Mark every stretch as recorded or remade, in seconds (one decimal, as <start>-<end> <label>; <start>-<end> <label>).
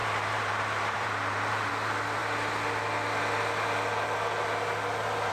0.0-1.7 remade; 1.7-5.3 recorded